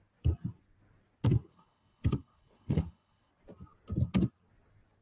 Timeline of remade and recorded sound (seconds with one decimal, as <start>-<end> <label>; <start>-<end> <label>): 0.0-1.5 recorded; 1.5-3.3 remade; 3.3-5.0 recorded